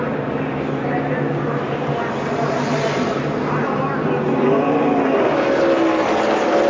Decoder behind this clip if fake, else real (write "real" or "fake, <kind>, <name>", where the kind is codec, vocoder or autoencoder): real